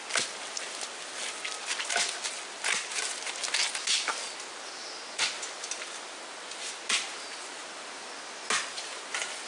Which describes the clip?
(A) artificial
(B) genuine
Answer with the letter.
B